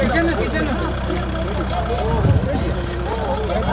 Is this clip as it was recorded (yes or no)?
yes